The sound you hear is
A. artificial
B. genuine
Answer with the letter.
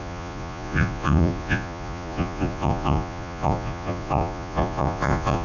A